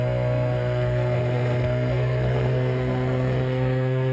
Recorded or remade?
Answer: remade